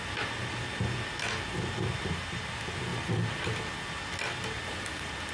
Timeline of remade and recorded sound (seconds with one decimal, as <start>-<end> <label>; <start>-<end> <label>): 0.0-5.3 recorded